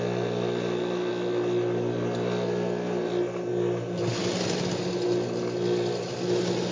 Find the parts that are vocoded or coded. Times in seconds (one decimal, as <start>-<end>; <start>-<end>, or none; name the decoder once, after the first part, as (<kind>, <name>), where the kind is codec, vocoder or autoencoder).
none